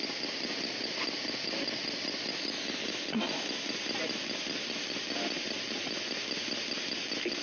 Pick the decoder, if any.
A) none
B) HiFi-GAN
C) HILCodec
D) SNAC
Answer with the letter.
A